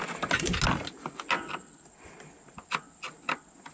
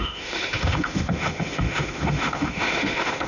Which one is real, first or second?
first